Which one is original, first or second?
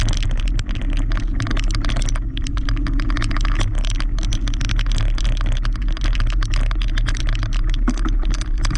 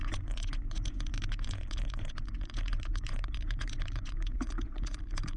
first